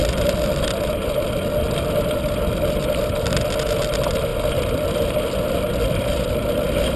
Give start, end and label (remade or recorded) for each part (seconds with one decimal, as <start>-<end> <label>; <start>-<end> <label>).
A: 0.0-7.0 recorded